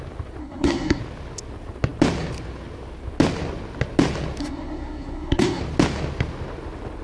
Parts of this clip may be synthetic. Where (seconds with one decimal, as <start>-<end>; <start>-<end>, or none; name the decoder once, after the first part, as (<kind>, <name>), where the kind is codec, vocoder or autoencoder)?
0.4-1.0 (codec, SNAC); 4.4-5.6